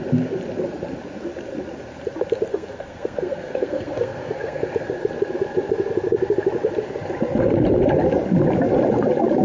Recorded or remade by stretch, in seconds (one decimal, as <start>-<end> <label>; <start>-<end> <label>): 0.0-2.5 recorded; 2.5-4.6 remade; 4.6-9.4 recorded